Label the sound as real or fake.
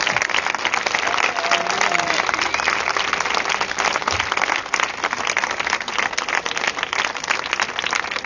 real